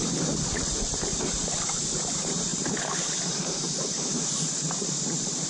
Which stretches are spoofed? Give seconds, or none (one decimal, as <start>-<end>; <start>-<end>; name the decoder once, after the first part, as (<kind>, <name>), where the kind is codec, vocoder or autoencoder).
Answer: 0.7-5.5 (vocoder, BigVGAN v2)

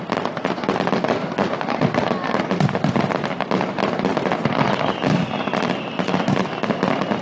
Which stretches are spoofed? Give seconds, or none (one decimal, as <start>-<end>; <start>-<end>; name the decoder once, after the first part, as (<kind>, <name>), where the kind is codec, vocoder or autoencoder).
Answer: none

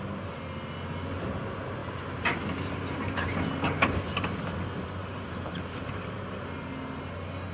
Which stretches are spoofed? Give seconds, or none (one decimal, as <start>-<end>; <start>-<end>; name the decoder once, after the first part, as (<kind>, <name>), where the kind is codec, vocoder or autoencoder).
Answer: 1.8-3.4 (vocoder, BigVGAN v2); 5.0-6.4

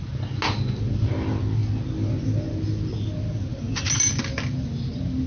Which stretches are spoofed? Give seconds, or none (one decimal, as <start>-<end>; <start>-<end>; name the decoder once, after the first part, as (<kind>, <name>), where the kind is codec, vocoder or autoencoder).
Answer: 3.5-4.1 (vocoder, BigVGAN v2)

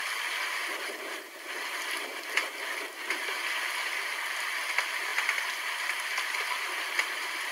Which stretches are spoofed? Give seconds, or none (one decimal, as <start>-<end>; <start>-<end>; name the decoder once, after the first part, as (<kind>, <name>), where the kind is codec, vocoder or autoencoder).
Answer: 5.1-7.5 (vocoder, BigVGAN v2)

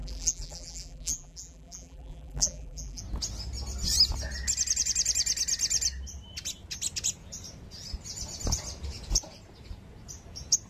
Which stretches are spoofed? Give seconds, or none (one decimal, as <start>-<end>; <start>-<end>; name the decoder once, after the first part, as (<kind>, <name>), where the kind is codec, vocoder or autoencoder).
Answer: 0.0-3.0 (vocoder, BigVGAN v2)